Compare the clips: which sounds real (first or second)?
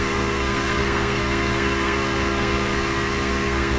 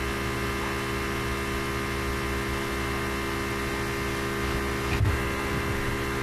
second